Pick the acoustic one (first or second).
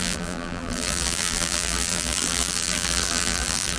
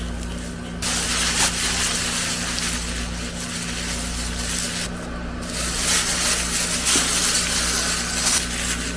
second